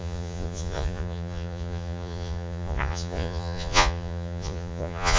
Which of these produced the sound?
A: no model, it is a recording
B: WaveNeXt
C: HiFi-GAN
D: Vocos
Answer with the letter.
D